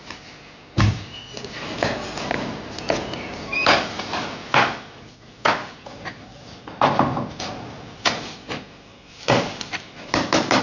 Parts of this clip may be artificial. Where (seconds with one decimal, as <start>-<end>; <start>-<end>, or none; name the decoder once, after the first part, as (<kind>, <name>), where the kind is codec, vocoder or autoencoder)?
6.3-6.9 (vocoder, BigVGAN v2); 8.9-10.6